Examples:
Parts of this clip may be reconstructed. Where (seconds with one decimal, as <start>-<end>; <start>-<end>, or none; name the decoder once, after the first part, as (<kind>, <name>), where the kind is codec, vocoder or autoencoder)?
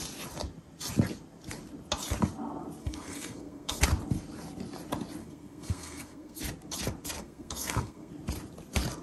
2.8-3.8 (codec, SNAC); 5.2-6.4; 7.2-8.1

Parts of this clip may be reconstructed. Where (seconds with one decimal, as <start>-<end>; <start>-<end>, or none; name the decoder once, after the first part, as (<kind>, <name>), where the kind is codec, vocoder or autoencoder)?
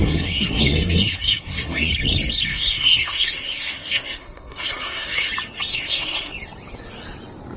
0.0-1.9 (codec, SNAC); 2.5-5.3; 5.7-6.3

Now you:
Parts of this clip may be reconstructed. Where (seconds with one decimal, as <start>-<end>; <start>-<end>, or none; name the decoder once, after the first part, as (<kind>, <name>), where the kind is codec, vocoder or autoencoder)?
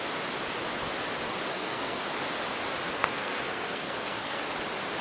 1.5-2.0 (codec, SNAC); 3.0-4.4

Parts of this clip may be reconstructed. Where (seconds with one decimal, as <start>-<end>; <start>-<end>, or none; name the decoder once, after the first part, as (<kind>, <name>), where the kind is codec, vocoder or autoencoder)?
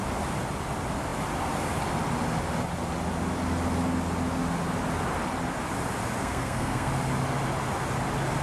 6.2-6.9 (codec, SNAC)